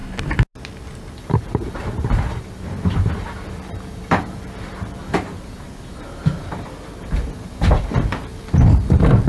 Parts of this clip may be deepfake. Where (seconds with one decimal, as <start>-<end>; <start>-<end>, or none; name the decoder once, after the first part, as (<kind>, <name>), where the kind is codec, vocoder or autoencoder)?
1.1-9.3 (vocoder, BigVGAN v2)